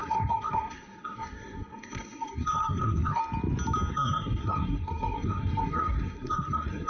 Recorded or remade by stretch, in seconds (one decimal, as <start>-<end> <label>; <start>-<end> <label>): 0.0-3.2 remade; 3.2-3.9 recorded; 3.9-6.9 remade